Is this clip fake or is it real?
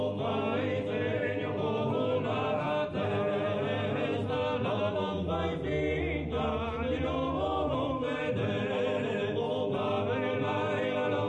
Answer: real